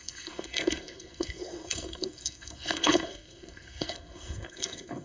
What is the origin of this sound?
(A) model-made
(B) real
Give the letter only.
A